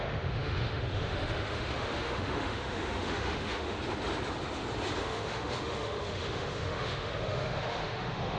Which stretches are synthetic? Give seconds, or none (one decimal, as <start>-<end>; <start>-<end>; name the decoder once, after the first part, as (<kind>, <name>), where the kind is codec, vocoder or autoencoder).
0.0-3.8 (autoencoder, DAC-VAE); 5.0-8.4